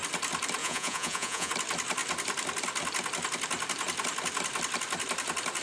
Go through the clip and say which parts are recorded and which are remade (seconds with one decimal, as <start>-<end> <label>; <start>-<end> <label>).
0.0-0.6 recorded; 0.6-1.5 remade; 1.5-5.6 recorded